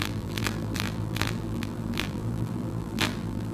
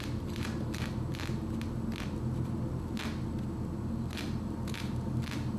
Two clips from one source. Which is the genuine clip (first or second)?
second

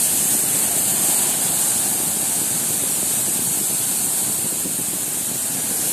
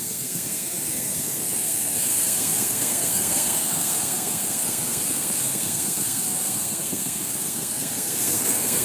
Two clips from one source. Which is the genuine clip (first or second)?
first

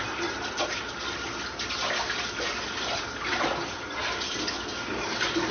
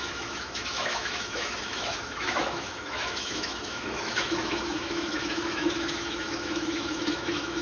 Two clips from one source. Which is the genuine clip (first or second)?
first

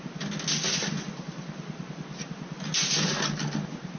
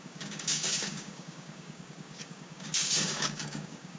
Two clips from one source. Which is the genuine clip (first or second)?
first